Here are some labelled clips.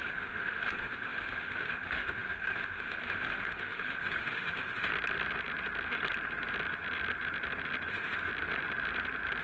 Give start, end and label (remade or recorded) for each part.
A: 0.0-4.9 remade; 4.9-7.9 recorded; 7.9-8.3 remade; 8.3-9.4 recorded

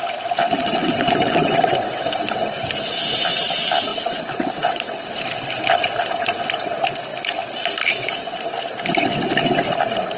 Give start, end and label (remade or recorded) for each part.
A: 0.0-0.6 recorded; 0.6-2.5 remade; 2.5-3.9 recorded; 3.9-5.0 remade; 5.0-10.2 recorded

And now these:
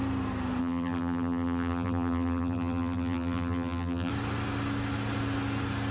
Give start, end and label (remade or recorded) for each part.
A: 0.0-0.6 recorded; 0.6-4.1 remade; 4.1-5.9 recorded

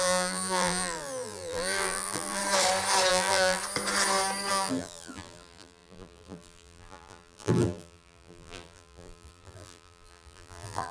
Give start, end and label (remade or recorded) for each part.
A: 0.0-2.4 remade; 2.4-3.1 recorded; 3.1-3.6 remade; 3.6-4.5 recorded; 4.5-10.9 remade